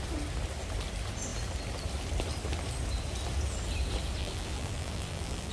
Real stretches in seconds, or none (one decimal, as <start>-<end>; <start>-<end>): 0.0-4.2